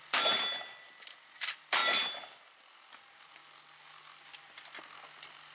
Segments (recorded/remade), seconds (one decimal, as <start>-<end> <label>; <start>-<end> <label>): 0.0-5.5 recorded